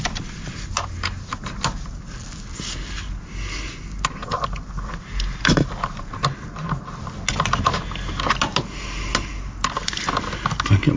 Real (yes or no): yes